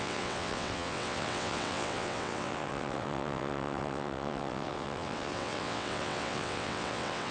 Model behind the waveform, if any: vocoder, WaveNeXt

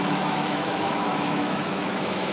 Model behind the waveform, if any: autoencoder, DAC-VAE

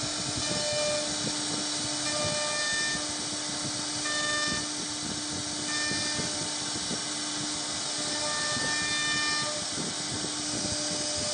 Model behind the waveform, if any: none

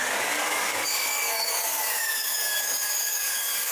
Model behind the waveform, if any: codec, DAC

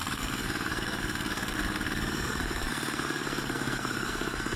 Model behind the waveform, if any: codec, SNAC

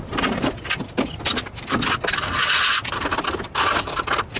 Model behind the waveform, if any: none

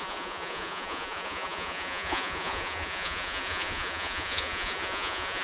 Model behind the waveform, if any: vocoder, Vocos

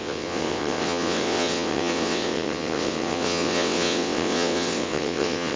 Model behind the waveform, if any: vocoder, WaveNeXt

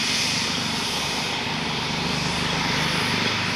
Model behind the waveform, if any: none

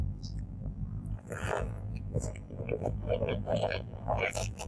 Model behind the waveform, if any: vocoder, BigVGAN v2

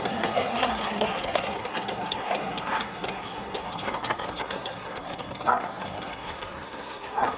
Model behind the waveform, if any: codec, SNAC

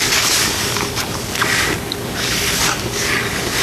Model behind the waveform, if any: codec, DAC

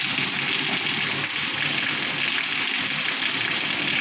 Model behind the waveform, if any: none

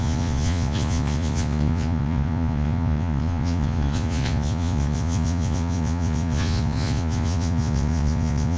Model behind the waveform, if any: vocoder, Vocos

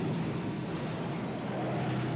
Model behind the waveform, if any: none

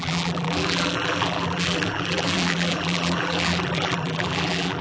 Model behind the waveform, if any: vocoder, BigVGAN v2